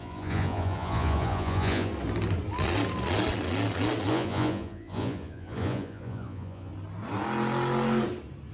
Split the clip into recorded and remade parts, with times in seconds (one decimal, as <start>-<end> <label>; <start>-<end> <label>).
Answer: 0.0-1.9 remade; 1.9-4.1 recorded; 4.1-6.7 remade; 6.7-8.5 recorded